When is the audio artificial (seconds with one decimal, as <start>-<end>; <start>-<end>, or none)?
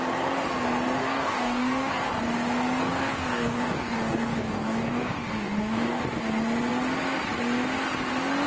1.0-2.2; 2.8-6.0